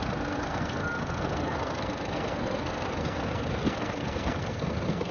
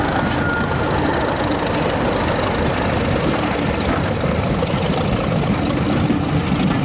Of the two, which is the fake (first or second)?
first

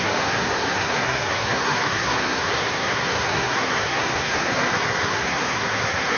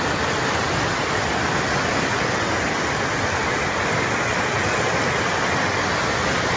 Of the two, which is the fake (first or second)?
first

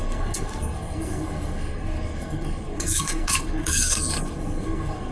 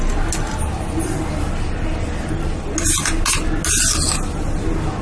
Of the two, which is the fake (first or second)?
first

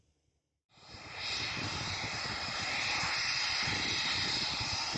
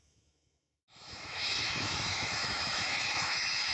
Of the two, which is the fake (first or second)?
second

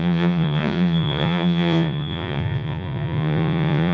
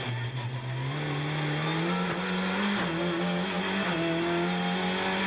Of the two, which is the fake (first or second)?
first